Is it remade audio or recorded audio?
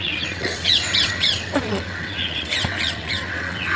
remade